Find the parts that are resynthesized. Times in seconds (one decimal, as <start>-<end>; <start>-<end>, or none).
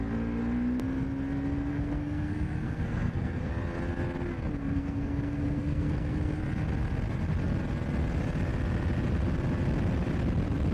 1.7-3.5; 4.6-6.4